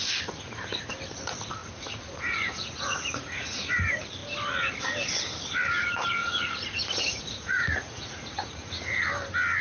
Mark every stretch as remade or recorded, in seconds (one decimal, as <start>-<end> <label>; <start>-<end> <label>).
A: 0.0-1.6 recorded; 1.6-3.7 remade; 3.7-6.2 recorded; 6.2-9.0 remade; 9.0-9.6 recorded